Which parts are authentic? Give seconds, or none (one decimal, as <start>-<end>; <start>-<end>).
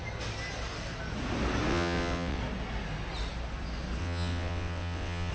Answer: 0.0-1.7; 2.4-4.0